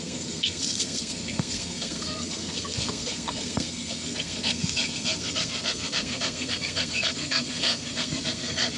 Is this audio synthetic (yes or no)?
yes